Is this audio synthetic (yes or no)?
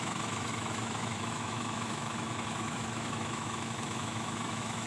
yes